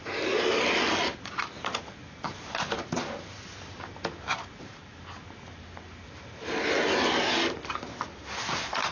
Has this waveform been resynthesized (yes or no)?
yes